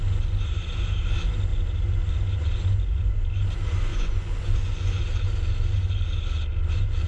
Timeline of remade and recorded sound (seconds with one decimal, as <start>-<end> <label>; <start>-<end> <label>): 0.0-3.9 recorded; 3.9-5.0 remade; 5.0-7.1 recorded